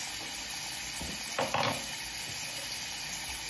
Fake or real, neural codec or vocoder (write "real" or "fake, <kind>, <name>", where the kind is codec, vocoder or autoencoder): real